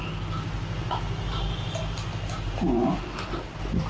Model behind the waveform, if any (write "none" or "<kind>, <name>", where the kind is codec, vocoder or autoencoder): none